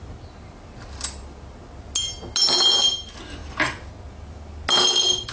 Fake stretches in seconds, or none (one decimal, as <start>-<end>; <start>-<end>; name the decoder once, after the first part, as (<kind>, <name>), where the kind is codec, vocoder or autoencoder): none